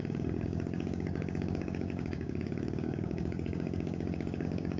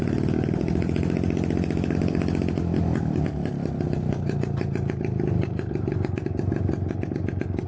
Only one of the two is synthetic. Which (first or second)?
first